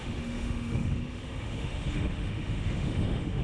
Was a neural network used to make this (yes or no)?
yes